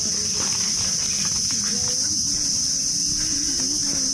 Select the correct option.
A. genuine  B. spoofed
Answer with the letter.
A